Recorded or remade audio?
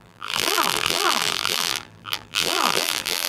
remade